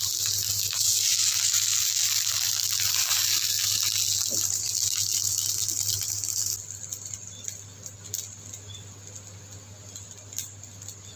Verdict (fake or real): real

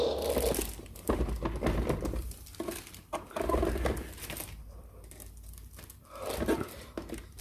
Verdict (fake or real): real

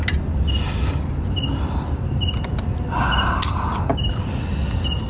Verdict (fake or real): real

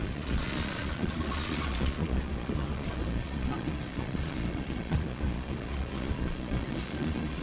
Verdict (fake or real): fake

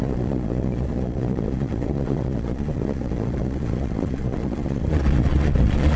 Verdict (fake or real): fake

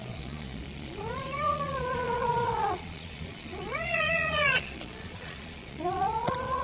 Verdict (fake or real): fake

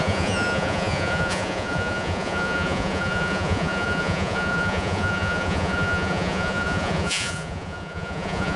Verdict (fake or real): fake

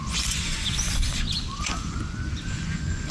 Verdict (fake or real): fake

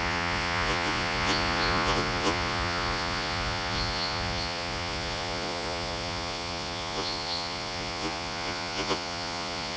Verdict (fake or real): fake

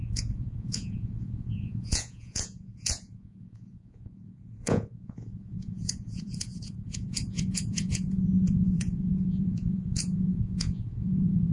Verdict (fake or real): fake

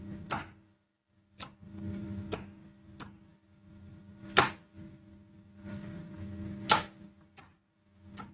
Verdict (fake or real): real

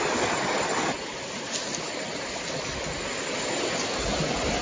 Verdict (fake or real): real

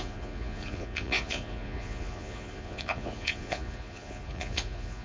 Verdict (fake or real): fake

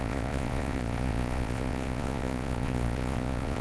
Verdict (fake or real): fake